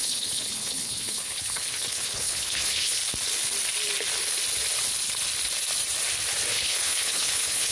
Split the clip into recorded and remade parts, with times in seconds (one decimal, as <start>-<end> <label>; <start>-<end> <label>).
0.0-3.0 remade; 3.0-6.5 recorded; 6.5-7.7 remade

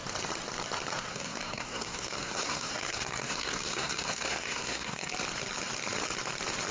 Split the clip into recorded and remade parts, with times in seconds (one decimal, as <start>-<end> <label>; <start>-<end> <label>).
0.0-1.1 recorded; 1.1-5.1 remade; 5.1-6.7 recorded

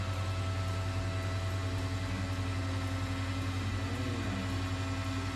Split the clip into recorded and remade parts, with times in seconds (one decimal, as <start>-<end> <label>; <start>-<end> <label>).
0.0-5.4 recorded

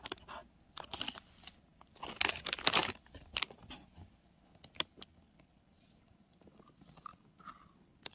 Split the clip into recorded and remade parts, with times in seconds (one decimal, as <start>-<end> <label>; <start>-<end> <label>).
0.0-8.1 recorded